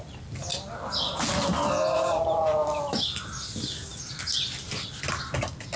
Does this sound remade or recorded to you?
recorded